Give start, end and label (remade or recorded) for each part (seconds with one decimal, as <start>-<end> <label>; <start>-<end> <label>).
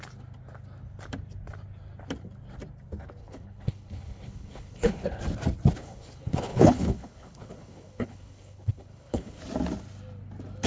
0.0-3.2 recorded; 3.2-5.2 remade; 5.2-5.8 recorded; 5.8-9.4 remade; 9.4-10.7 recorded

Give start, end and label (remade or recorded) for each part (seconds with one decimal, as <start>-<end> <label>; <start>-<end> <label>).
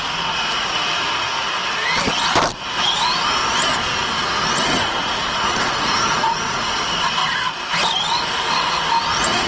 0.0-1.6 remade; 1.6-4.5 recorded; 4.5-7.2 remade; 7.2-9.1 recorded; 9.1-9.5 remade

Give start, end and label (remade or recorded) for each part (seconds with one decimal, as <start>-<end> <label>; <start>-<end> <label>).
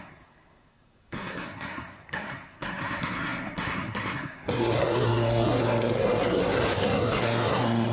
0.0-7.9 remade